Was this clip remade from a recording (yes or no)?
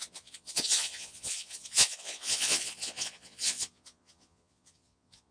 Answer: yes